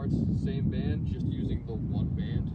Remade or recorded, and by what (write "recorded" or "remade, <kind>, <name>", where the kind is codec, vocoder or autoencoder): recorded